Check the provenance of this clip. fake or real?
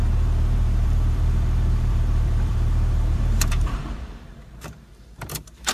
fake